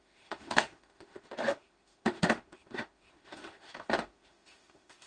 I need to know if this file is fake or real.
fake